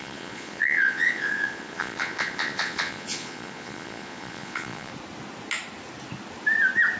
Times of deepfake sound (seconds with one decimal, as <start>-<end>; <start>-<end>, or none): 0.0-4.9